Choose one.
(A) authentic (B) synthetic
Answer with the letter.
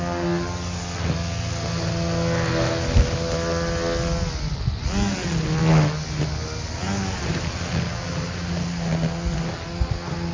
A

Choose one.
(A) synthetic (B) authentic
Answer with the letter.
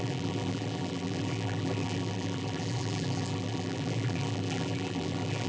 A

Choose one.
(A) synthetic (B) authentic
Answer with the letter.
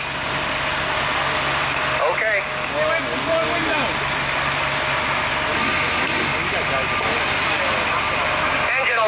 B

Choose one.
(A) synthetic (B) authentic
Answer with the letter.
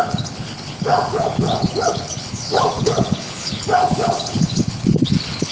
A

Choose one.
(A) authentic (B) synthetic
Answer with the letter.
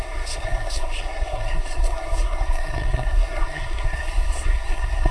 B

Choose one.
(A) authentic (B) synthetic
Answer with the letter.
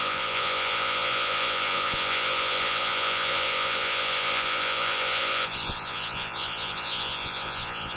B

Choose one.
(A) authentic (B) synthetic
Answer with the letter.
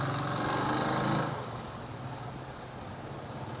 A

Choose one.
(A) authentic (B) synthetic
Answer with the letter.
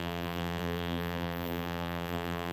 B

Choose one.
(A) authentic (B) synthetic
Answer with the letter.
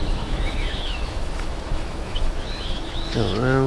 B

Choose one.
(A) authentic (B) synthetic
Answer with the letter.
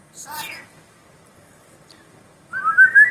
A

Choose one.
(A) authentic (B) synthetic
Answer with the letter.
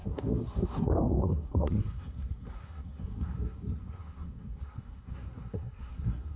B